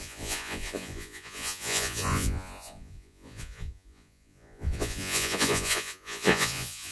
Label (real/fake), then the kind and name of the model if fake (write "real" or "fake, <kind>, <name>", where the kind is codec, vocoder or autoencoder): fake, vocoder, Vocos